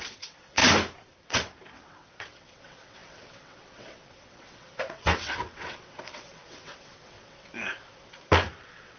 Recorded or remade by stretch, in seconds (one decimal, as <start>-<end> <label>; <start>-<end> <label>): 0.0-0.6 remade; 0.6-1.2 recorded; 1.2-7.5 remade; 7.5-8.6 recorded; 8.6-9.0 remade

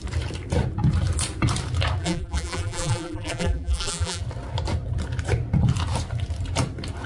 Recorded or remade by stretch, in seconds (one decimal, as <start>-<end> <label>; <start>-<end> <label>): 0.0-2.0 recorded; 2.0-4.2 remade; 4.2-7.1 recorded

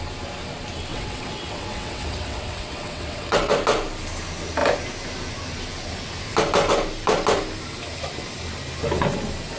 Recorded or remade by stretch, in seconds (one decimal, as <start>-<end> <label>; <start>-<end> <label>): 0.0-0.9 recorded; 0.9-3.5 remade; 3.5-9.6 recorded